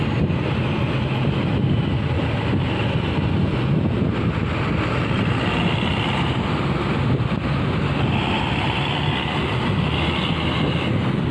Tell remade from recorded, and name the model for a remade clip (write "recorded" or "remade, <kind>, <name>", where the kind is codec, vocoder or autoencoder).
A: recorded